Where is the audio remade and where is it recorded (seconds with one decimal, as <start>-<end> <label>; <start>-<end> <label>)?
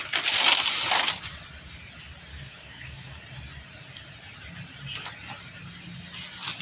0.0-2.3 recorded; 2.3-3.2 remade; 3.2-6.6 recorded